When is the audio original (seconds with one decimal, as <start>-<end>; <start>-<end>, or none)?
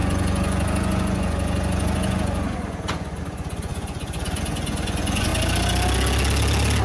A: 5.3-6.8